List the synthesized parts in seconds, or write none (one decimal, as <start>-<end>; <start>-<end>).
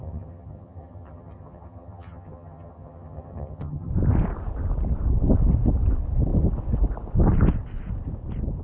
0.0-3.9